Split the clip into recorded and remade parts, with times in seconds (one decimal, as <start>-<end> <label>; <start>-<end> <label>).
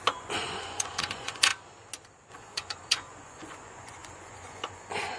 0.0-1.5 remade; 1.5-2.3 recorded; 2.3-5.2 remade